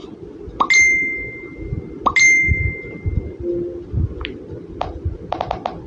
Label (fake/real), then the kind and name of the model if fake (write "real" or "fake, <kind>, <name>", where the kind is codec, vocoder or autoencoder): real